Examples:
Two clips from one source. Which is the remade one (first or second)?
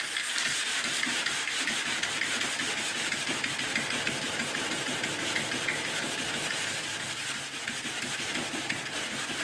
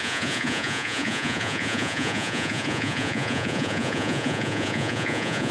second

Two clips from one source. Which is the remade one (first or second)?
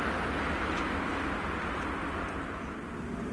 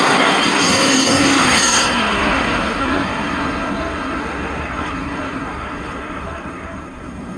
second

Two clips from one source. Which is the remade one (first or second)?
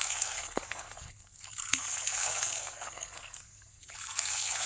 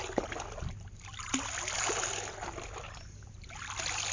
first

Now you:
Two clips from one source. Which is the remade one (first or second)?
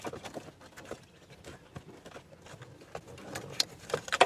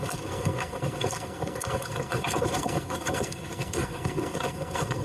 second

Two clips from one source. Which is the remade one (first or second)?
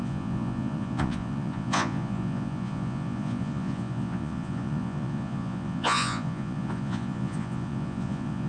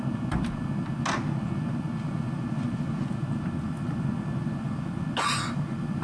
first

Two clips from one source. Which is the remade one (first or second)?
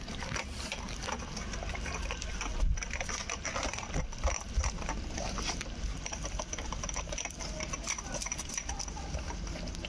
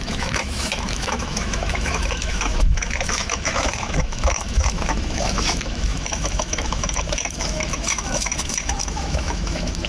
second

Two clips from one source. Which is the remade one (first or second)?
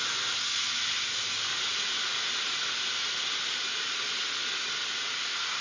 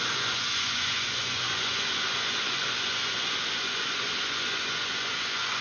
second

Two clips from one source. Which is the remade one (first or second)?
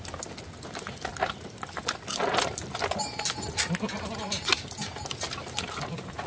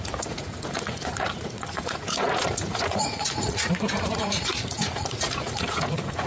second